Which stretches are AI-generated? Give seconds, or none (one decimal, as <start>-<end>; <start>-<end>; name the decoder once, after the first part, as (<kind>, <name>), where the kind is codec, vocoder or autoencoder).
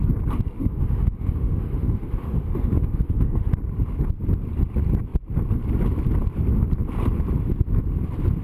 0.6-3.5 (autoencoder, DAC-VAE)